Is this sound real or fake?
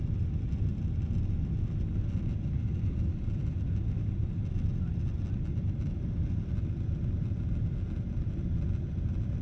real